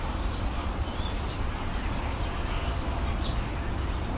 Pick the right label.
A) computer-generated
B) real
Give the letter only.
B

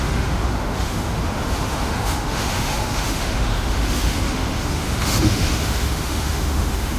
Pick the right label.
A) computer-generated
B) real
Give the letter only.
A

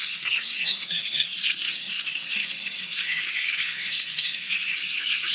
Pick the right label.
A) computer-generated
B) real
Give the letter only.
A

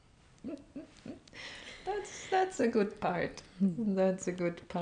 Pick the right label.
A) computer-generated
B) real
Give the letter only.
B